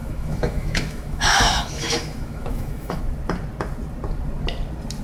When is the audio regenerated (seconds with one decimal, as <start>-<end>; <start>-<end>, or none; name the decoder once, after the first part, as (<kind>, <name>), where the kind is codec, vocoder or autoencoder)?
0.0-3.0 (autoencoder, DAC-VAE)